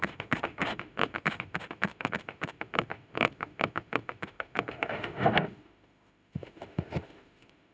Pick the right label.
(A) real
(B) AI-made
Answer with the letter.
B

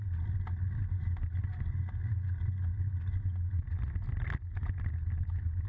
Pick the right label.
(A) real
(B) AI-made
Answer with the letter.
A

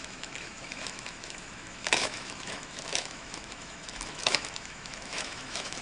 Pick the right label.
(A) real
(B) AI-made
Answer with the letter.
B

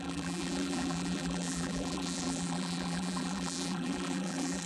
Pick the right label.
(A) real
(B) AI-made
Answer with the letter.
B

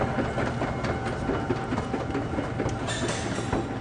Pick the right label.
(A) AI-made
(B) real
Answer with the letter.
B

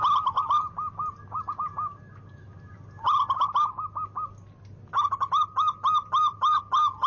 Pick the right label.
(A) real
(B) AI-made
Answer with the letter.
A